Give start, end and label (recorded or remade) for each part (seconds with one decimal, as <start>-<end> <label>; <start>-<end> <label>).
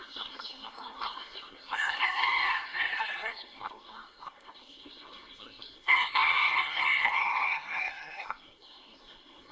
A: 0.0-9.5 remade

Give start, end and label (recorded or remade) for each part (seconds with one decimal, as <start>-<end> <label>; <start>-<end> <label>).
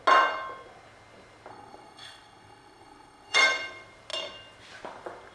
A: 0.0-1.5 recorded; 1.5-3.4 remade; 3.4-5.3 recorded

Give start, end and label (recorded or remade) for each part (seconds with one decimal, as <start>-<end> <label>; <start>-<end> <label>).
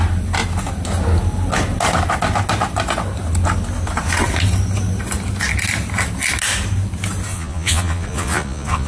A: 0.0-7.3 recorded; 7.3-8.9 remade